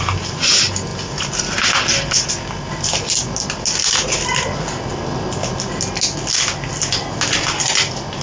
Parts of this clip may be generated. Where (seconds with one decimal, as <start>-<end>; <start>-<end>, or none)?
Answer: none